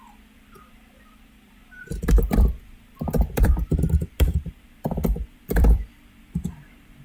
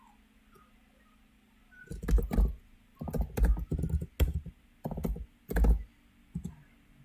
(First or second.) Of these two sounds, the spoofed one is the first